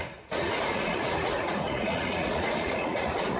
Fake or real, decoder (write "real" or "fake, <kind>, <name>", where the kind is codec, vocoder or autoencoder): fake, vocoder, Vocos